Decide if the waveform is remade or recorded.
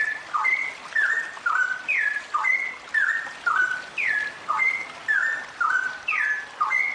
recorded